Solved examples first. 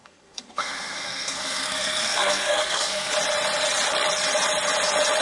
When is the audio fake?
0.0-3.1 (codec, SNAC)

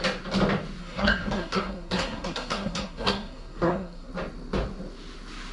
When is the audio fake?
0.8-4.1 (codec, SNAC)

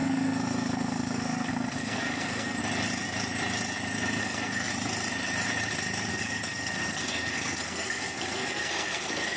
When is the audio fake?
0.0-2.6 (codec, SNAC); 4.2-4.7; 6.1-9.4

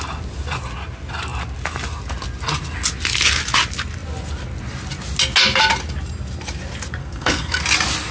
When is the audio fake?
7.0-7.6 (codec, SNAC)

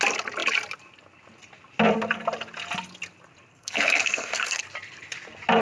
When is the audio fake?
3.5-4.6 (codec, SNAC)

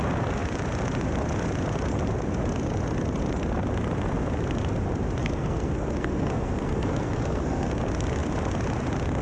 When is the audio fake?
5.2-7.7 (codec, SNAC)

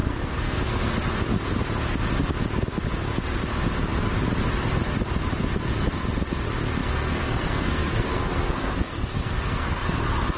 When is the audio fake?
0.0-0.9 (codec, SNAC); 6.8-10.0

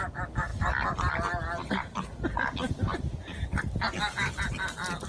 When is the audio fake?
none